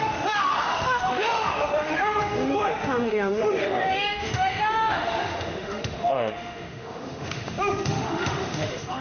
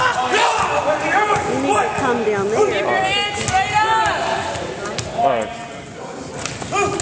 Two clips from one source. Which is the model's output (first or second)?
first